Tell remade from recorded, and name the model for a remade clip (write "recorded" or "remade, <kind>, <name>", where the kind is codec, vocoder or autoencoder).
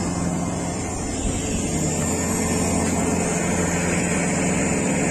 recorded